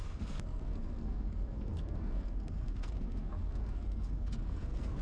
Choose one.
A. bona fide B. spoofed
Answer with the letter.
B